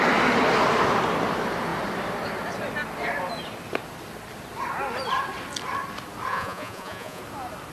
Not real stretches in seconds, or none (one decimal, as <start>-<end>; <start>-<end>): 6.3-7.2